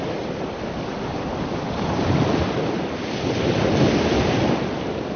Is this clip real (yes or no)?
yes